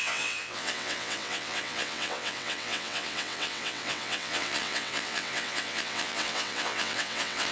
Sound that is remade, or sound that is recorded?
remade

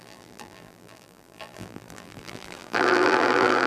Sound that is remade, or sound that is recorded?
remade